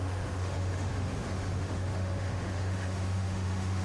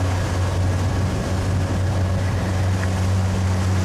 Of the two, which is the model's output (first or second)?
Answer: first